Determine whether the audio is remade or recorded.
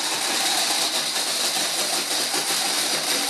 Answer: recorded